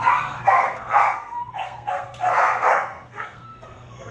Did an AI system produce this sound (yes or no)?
yes